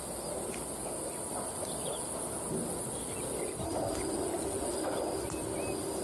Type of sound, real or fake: real